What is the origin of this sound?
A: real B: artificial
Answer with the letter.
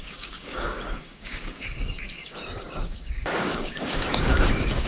B